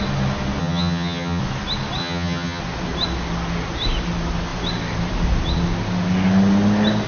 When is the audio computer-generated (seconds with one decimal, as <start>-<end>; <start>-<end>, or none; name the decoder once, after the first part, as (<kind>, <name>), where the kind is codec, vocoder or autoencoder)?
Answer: 0.6-1.4 (vocoder, HiFi-GAN); 2.0-2.6